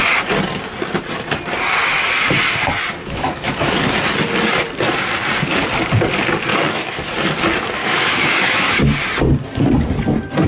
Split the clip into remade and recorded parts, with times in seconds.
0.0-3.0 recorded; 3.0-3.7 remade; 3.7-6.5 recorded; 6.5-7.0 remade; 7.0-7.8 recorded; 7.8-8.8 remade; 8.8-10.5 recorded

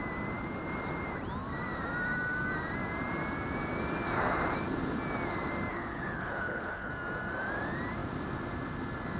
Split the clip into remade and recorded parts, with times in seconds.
0.0-5.7 recorded; 5.7-6.9 remade; 6.9-9.2 recorded

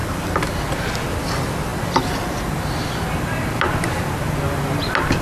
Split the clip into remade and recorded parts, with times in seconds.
0.0-5.2 recorded

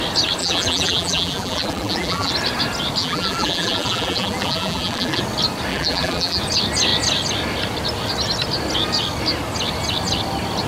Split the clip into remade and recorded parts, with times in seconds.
0.0-0.4 recorded; 0.4-2.3 remade; 2.3-3.0 recorded; 3.0-5.2 remade; 5.2-5.7 recorded; 5.7-6.4 remade; 6.4-10.7 recorded

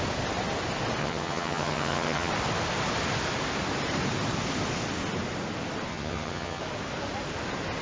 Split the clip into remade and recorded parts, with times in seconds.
0.0-1.0 recorded; 1.0-2.3 remade; 2.3-5.9 recorded; 5.9-6.6 remade; 6.6-7.8 recorded